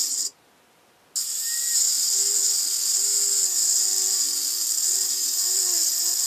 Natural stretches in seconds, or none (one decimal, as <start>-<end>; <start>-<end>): 0.0-6.3